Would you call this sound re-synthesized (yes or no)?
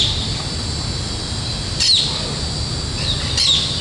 no